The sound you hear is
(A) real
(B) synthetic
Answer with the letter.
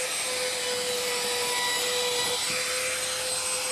A